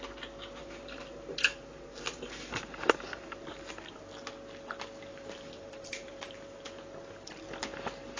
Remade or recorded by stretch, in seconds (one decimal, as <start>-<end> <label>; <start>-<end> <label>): 0.0-0.6 recorded; 0.6-3.7 remade; 3.7-5.1 recorded; 5.1-6.6 remade; 6.6-8.2 recorded